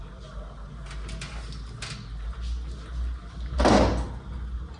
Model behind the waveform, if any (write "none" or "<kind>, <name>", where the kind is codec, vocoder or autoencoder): none